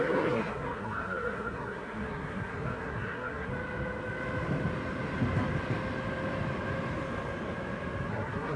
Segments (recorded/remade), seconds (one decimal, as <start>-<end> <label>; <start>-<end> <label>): 0.0-3.5 remade; 3.5-8.1 recorded; 8.1-8.6 remade